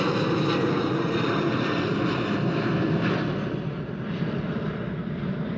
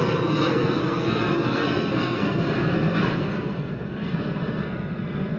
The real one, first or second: first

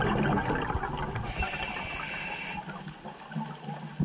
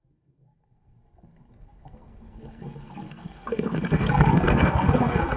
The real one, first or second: first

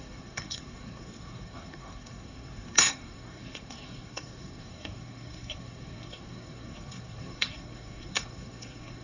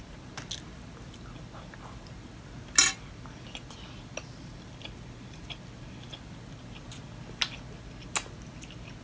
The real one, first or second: second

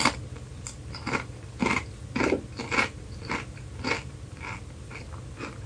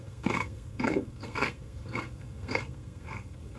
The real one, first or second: first